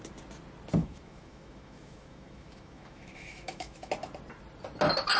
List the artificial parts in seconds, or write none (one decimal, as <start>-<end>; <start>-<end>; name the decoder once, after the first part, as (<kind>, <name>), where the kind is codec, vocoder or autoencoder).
0.8-3.9 (autoencoder, DAC-VAE)